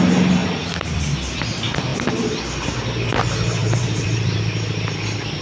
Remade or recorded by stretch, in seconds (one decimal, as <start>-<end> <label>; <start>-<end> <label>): 0.0-0.4 recorded; 0.4-1.0 remade; 1.0-1.9 recorded; 1.9-2.7 remade; 2.7-3.6 recorded; 3.6-4.4 remade; 4.4-5.4 recorded